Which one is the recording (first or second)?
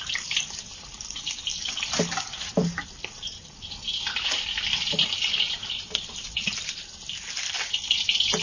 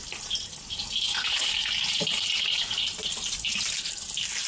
second